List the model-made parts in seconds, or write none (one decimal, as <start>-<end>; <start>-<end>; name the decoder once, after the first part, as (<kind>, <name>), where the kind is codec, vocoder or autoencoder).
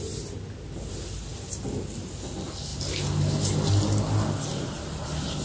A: 0.0-1.3 (vocoder, BigVGAN v2); 2.3-2.7; 3.7-5.4